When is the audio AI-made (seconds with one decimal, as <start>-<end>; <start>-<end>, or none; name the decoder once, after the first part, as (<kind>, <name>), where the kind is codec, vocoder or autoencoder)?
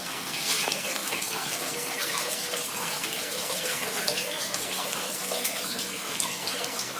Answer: 0.0-7.0 (codec, SNAC)